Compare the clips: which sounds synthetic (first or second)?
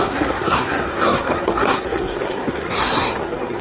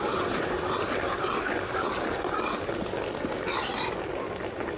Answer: first